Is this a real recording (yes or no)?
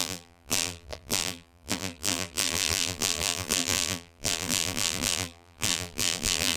no